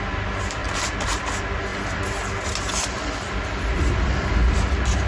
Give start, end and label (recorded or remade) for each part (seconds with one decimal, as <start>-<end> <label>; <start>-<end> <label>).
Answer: 0.0-1.7 remade; 1.7-2.7 recorded; 2.7-5.1 remade